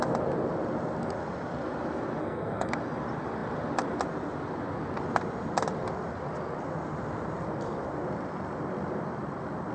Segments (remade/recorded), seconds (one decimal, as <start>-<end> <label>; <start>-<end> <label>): 0.0-2.2 recorded; 2.2-2.7 remade; 2.7-9.7 recorded